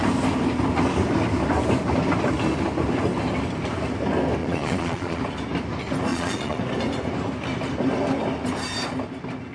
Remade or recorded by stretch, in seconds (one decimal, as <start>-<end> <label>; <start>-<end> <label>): 0.0-4.4 recorded; 4.4-5.2 remade; 5.2-6.1 recorded; 6.1-6.6 remade; 6.6-9.5 recorded

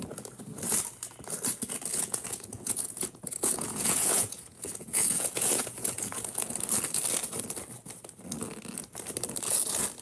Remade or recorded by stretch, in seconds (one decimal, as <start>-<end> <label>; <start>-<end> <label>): 0.0-1.9 recorded; 1.9-6.5 remade; 6.5-10.0 recorded

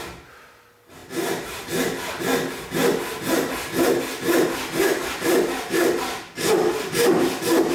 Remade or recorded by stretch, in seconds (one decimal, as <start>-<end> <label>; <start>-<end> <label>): 0.0-7.7 recorded

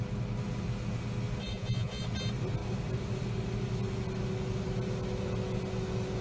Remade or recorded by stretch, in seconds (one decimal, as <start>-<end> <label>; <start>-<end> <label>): 0.0-1.4 recorded; 1.4-2.0 remade; 2.0-6.2 recorded

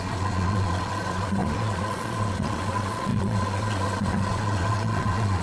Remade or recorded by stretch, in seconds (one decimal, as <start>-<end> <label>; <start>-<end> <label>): 0.0-5.4 remade

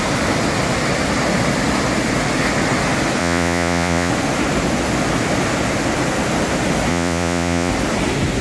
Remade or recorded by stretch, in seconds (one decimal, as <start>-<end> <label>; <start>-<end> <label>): 0.0-3.2 recorded; 3.2-4.1 remade; 4.1-6.9 recorded; 6.9-7.7 remade; 7.7-8.4 recorded

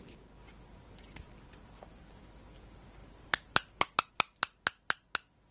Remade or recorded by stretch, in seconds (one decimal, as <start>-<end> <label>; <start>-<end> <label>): 0.0-5.5 recorded

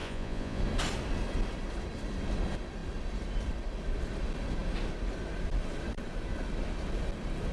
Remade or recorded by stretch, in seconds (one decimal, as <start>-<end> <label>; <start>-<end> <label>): 0.0-0.6 remade; 0.6-7.5 recorded